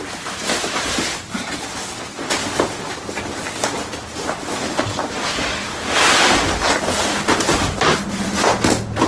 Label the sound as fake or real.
real